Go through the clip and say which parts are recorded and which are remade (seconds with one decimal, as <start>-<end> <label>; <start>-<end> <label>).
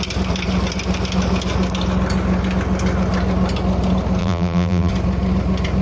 0.0-4.2 recorded; 4.2-4.9 remade; 4.9-5.8 recorded